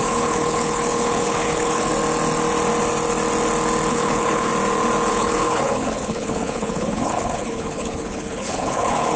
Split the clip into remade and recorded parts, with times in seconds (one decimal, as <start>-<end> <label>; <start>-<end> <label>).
0.0-1.9 remade; 1.9-3.9 recorded; 3.9-4.5 remade; 4.5-5.1 recorded; 5.1-9.2 remade